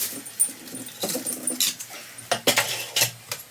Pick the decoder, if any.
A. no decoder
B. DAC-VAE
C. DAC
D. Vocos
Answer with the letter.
A